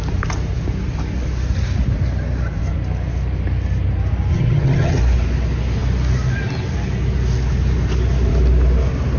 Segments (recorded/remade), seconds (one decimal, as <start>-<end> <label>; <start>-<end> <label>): 0.0-4.3 recorded; 4.3-5.0 remade; 5.0-9.2 recorded